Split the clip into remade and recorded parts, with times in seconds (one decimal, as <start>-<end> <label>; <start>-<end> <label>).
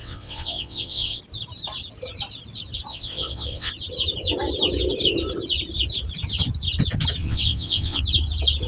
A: 0.0-1.2 remade; 1.2-2.9 recorded; 2.9-3.7 remade; 3.7-7.2 recorded; 7.2-8.0 remade; 8.0-8.7 recorded